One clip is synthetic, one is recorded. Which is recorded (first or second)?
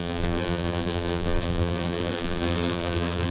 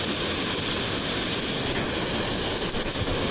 second